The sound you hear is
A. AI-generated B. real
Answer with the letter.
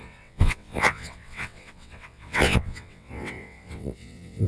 A